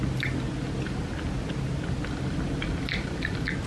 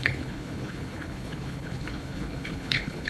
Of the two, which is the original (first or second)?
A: first